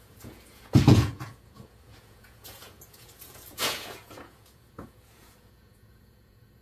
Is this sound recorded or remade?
remade